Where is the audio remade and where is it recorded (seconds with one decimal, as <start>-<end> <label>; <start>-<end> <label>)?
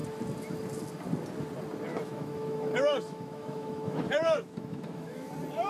0.0-1.9 recorded; 1.9-5.3 remade; 5.3-5.7 recorded